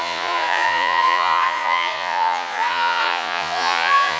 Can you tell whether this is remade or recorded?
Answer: remade